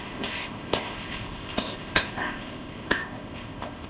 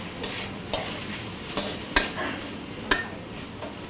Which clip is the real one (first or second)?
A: second